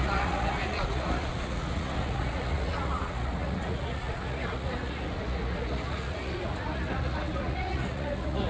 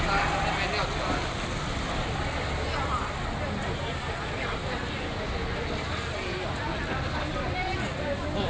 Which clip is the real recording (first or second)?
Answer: second